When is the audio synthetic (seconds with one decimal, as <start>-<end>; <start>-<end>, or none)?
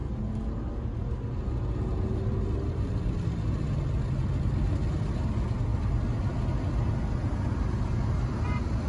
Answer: none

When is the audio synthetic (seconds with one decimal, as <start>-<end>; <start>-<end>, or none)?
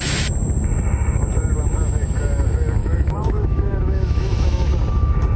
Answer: 2.8-4.7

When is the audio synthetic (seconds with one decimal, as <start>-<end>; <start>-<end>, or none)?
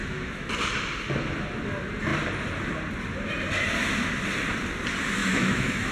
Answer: 0.0-0.5; 5.2-5.9